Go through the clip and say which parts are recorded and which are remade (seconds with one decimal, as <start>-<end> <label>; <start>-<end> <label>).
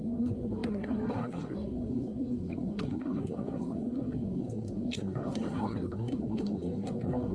0.0-7.3 remade